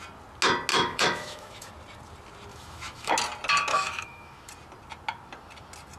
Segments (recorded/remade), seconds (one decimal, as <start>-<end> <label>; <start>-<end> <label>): 0.0-0.7 recorded; 0.7-1.7 remade; 1.7-2.5 recorded; 2.5-3.1 remade; 3.1-3.7 recorded; 3.7-4.5 remade; 4.5-6.0 recorded